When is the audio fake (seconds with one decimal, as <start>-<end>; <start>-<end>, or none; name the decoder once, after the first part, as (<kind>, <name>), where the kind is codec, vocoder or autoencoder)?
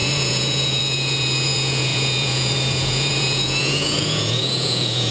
0.0-5.1 (vocoder, Vocos)